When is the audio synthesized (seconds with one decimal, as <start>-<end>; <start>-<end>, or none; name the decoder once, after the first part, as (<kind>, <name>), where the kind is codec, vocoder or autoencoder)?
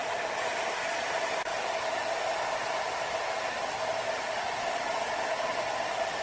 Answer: none